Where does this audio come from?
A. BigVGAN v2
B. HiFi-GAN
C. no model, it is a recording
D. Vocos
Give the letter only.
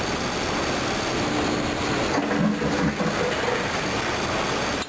C